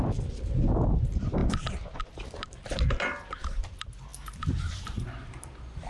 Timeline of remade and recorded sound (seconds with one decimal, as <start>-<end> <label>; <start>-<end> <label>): 0.0-5.9 recorded